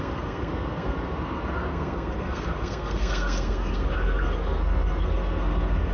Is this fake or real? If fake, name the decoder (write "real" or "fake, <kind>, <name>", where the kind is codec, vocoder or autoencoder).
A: fake, codec, SNAC